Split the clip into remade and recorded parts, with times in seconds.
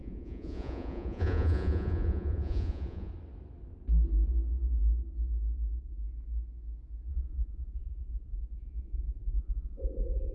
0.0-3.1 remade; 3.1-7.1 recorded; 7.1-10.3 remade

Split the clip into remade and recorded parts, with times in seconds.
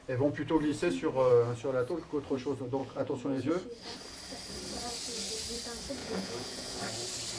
0.0-2.8 recorded; 2.8-3.5 remade; 3.5-6.0 recorded; 6.0-6.8 remade; 6.8-7.4 recorded